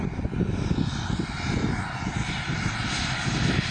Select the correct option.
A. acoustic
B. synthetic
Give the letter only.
A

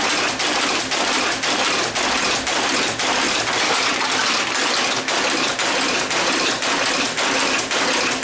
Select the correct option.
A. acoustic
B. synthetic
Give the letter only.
A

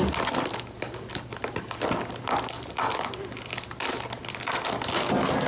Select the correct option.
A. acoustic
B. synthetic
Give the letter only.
A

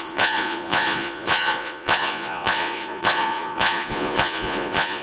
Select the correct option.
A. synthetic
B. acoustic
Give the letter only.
A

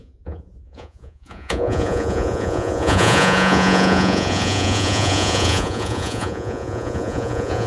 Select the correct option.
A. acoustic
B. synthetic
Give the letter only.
B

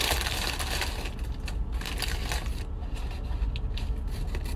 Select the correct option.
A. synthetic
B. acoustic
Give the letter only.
B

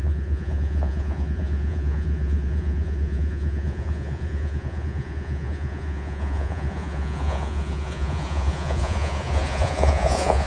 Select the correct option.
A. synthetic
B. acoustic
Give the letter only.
A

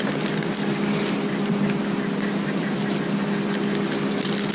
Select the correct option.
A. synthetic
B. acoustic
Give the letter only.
B